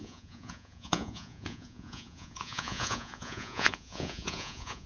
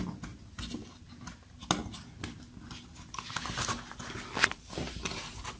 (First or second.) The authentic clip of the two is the second